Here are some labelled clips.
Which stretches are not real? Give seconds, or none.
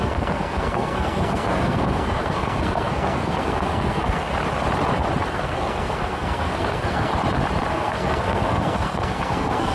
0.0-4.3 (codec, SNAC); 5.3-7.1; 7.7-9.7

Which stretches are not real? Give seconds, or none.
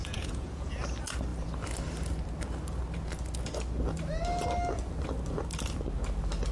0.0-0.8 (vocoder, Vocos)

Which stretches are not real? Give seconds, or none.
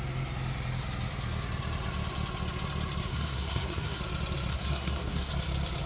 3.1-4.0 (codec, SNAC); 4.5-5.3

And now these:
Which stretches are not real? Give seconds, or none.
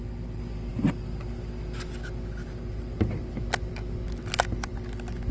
none